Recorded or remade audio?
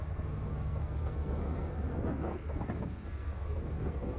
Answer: remade